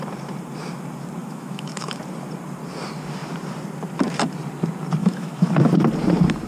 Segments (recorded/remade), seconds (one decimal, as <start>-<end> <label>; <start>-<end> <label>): 0.0-1.2 recorded; 1.2-2.0 remade; 2.0-5.0 recorded; 5.0-5.5 remade; 5.5-6.5 recorded

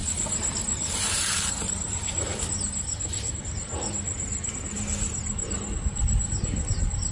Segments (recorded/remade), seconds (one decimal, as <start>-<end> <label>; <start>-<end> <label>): 0.0-7.1 recorded

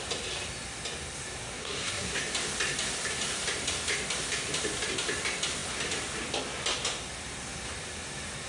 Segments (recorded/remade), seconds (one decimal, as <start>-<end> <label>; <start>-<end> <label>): 0.0-1.5 recorded; 1.5-2.2 remade; 2.2-8.5 recorded

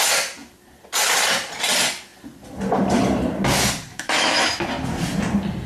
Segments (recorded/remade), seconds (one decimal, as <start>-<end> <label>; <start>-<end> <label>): 0.0-3.9 recorded; 3.9-4.7 remade; 4.7-5.7 recorded

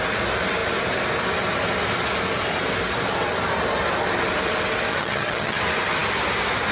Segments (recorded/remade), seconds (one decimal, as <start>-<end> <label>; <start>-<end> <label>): 0.0-4.9 recorded; 4.9-5.6 remade; 5.6-6.7 recorded